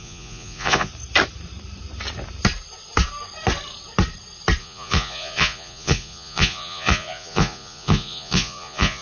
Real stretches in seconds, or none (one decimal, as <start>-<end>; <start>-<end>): 0.9-4.6